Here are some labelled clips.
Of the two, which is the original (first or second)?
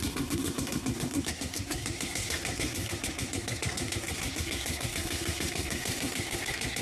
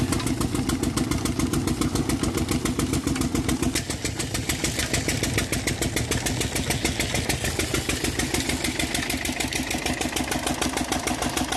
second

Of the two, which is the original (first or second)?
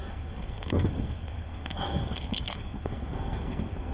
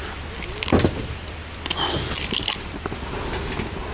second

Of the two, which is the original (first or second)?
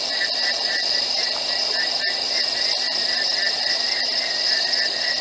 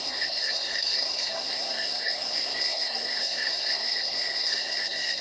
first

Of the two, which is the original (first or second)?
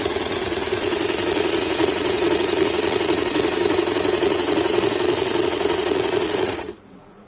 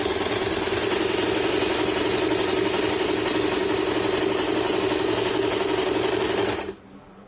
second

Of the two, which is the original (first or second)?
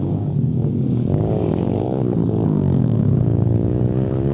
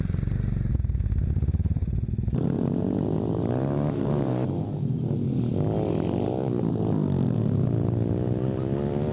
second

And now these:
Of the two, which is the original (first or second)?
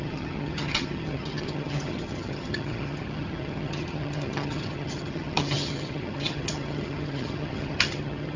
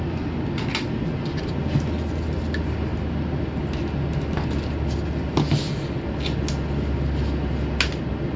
second